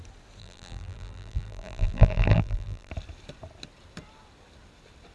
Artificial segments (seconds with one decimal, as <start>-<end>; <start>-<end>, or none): 0.4-2.9